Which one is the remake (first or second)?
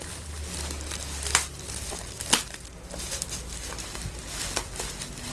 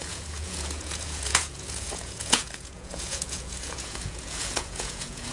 second